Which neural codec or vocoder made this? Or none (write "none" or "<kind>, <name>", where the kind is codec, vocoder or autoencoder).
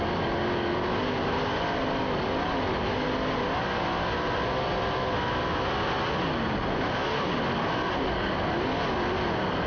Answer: none